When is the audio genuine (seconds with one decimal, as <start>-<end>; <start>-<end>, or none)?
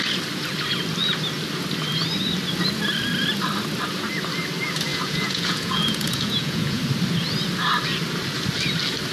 0.0-4.9; 6.8-9.1